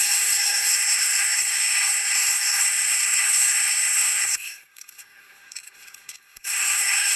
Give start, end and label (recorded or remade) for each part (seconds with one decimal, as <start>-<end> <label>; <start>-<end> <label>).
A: 0.0-7.2 remade